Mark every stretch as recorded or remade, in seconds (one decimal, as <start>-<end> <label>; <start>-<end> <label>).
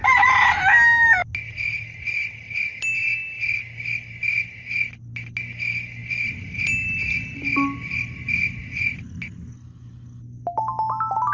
0.0-11.3 recorded